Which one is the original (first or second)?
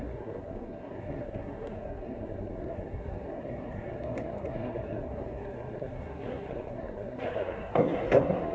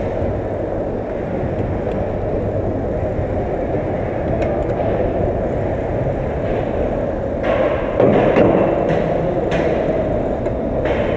second